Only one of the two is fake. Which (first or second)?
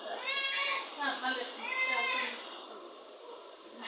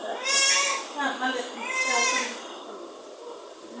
first